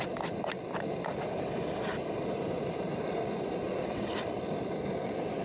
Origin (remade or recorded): recorded